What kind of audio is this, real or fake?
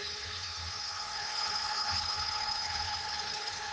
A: fake